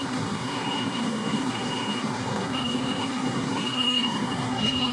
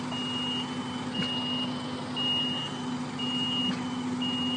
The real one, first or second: second